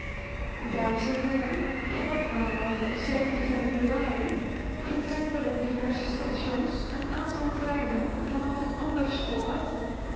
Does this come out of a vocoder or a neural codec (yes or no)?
yes